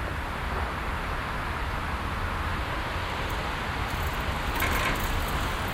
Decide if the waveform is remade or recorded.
recorded